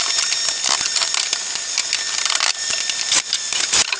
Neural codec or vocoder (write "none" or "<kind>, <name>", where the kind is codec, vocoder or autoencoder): none